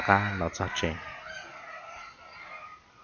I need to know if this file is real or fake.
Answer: real